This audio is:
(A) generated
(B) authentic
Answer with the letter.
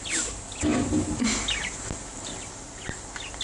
B